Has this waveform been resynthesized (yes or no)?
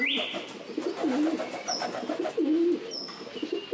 no